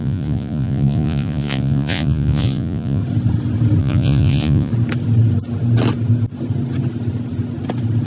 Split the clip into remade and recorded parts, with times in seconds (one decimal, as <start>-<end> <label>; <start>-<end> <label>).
0.0-3.0 remade; 3.0-3.8 recorded; 3.8-4.7 remade; 4.7-8.1 recorded